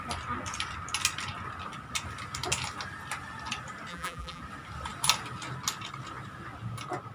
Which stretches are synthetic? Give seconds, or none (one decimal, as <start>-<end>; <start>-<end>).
3.9-4.4